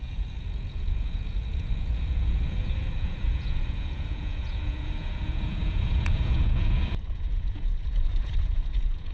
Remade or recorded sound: remade